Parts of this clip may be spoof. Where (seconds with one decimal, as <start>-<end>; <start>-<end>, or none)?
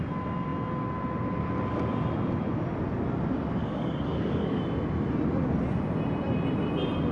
3.6-4.6